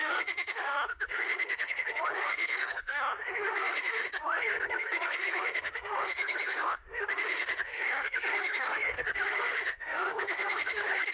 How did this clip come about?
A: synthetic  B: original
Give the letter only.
A